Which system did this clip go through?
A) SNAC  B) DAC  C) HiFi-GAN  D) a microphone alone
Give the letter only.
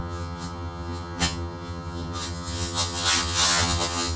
C